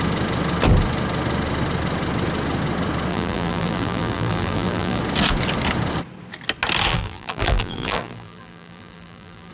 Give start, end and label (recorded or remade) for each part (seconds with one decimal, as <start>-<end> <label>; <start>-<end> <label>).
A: 0.0-3.1 recorded; 3.1-5.0 remade; 5.0-6.9 recorded; 6.9-9.5 remade